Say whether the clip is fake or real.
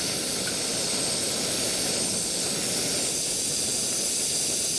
real